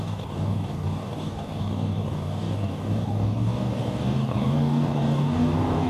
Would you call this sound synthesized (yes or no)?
yes